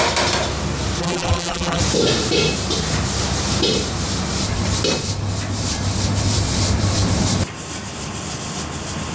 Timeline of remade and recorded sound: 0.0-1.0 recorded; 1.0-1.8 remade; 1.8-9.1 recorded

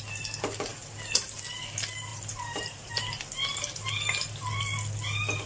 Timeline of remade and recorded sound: 0.0-2.1 recorded; 2.1-2.9 remade; 2.9-5.5 recorded

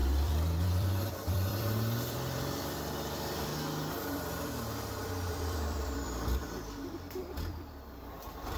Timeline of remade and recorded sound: 0.0-3.5 remade; 3.5-4.1 recorded; 4.1-7.2 remade; 7.2-8.1 recorded; 8.1-8.6 remade